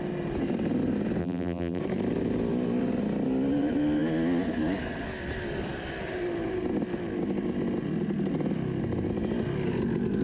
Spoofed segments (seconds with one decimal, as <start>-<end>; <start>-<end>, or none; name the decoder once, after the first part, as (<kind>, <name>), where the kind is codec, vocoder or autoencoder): 1.2-1.8 (vocoder, BigVGAN v2)